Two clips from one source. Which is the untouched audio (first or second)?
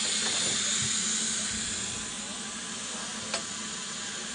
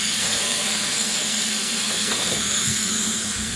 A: first